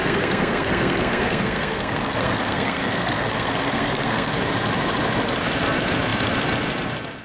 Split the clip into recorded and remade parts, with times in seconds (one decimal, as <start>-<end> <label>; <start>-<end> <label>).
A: 0.0-4.3 remade; 4.3-7.2 recorded